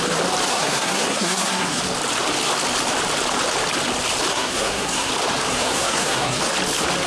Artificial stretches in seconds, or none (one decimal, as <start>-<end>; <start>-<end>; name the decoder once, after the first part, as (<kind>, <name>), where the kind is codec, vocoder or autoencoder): 0.5-1.8 (codec, SNAC); 4.3-5.1; 5.5-6.4